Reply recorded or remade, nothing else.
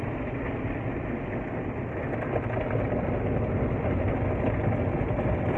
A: recorded